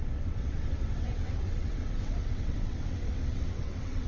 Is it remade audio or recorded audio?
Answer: remade